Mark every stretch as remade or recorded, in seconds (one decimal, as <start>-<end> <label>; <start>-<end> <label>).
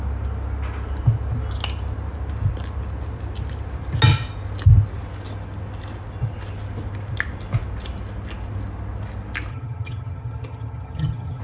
0.0-9.5 recorded; 9.5-11.4 remade